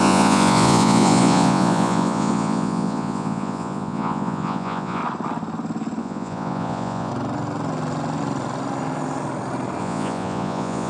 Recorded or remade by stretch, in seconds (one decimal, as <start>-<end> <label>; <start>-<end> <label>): 0.0-5.0 remade; 5.0-6.0 recorded; 6.0-7.1 remade; 7.1-9.8 recorded; 9.8-10.9 remade